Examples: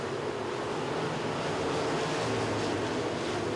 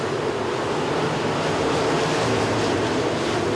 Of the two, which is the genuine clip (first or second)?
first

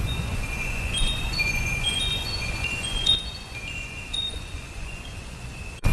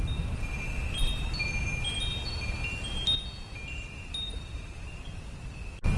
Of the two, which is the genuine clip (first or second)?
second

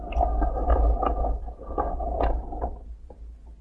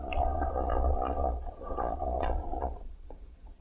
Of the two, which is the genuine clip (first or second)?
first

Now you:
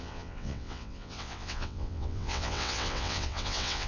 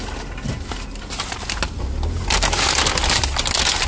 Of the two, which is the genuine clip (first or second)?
second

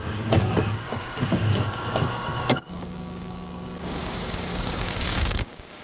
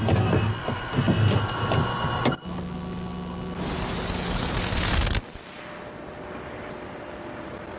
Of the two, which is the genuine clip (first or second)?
second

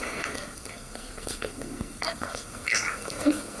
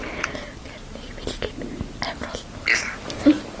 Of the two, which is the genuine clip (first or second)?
second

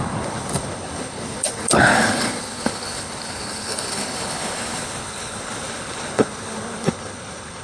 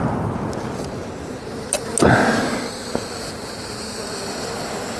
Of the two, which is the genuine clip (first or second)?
second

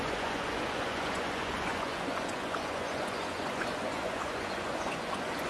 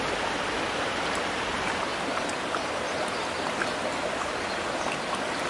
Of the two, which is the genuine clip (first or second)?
second